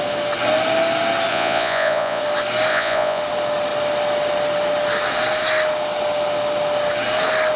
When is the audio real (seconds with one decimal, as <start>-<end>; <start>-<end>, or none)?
0.0-1.3; 2.2-2.7; 3.2-7.6